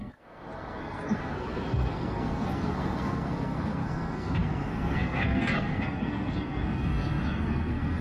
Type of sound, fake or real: fake